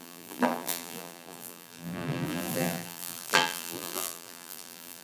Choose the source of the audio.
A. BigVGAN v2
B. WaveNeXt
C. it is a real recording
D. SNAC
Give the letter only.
A